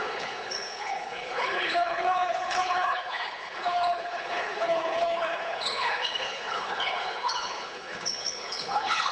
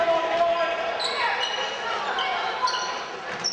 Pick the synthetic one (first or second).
first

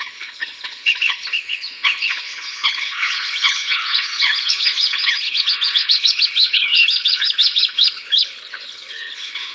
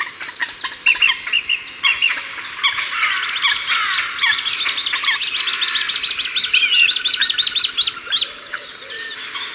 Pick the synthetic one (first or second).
first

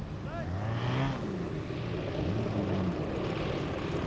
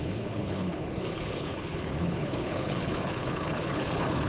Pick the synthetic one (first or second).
second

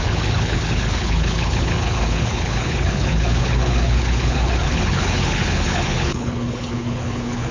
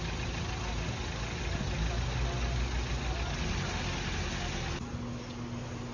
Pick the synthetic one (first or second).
first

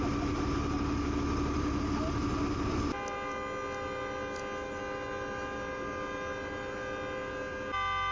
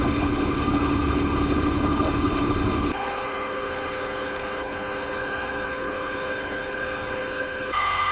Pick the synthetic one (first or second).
second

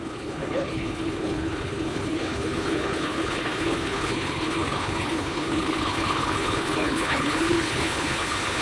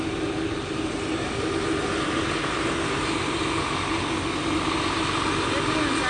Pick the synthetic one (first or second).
first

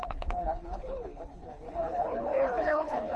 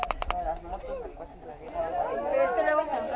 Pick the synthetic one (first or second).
first